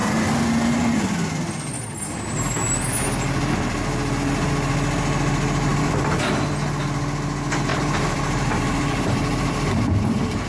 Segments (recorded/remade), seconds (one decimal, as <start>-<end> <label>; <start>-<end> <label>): 0.0-1.0 remade; 1.0-5.7 recorded; 5.7-6.3 remade; 6.3-7.7 recorded; 7.7-10.5 remade

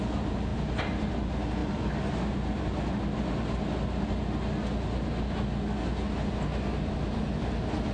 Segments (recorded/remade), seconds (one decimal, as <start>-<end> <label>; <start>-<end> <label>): 0.0-0.5 recorded; 0.5-1.1 remade; 1.1-1.6 recorded; 1.6-2.6 remade; 2.6-7.9 recorded

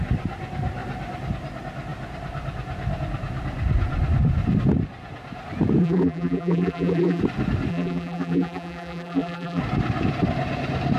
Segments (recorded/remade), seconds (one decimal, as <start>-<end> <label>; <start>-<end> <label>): 0.0-5.8 recorded; 5.8-7.2 remade; 7.2-7.7 recorded; 7.7-9.6 remade; 9.6-11.0 recorded

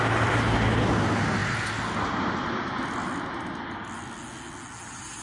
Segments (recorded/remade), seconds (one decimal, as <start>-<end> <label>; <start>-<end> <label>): 0.0-5.2 recorded

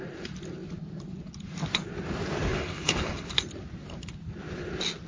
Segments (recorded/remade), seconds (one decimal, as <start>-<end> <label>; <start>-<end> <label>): 0.0-2.5 recorded; 2.5-3.3 remade; 3.3-5.1 recorded

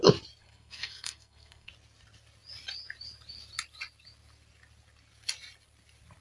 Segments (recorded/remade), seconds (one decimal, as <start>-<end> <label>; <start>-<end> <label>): 0.0-0.4 recorded; 0.4-1.7 remade; 1.7-6.2 recorded